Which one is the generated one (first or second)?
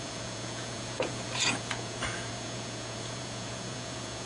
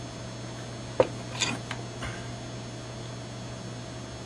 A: first